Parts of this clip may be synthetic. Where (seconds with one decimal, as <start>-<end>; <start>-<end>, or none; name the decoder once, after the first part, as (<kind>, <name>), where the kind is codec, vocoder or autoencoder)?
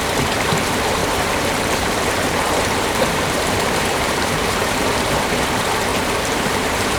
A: 1.0-5.2 (vocoder, BigVGAN v2); 5.9-7.0